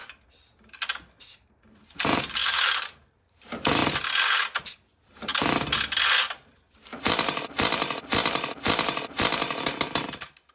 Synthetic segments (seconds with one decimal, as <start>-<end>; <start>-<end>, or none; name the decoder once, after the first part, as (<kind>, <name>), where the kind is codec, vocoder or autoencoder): 1.5-3.8 (vocoder, BigVGAN v2); 4.6-5.3; 6.7-10.5